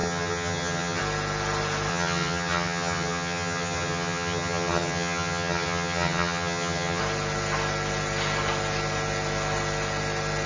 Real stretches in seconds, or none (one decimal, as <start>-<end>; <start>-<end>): 1.0-1.9; 7.0-10.5